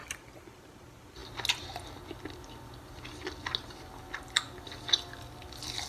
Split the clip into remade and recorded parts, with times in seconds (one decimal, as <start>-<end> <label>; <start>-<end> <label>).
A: 0.0-5.9 recorded